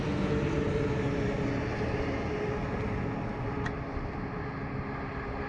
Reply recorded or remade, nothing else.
recorded